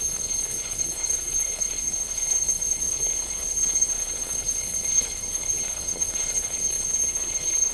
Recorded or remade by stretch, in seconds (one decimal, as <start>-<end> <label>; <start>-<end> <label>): 0.0-7.7 remade